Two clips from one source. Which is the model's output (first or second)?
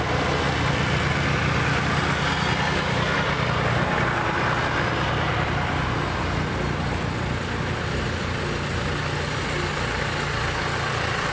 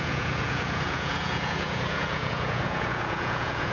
second